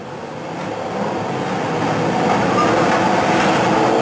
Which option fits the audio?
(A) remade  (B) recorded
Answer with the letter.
B